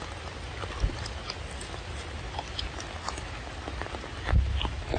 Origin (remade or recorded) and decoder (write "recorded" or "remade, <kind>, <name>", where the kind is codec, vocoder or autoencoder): recorded